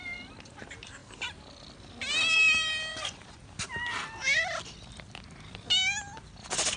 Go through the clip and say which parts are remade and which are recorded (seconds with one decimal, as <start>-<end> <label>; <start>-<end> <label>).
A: 0.0-2.9 recorded; 2.9-3.4 remade; 3.4-6.8 recorded